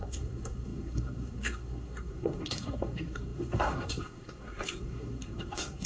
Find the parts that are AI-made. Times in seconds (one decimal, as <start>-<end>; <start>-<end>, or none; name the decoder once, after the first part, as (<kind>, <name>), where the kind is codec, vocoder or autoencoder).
0.0-5.9 (codec, SNAC)